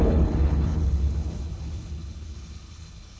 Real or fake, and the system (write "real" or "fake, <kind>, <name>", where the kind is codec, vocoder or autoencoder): fake, codec, HILCodec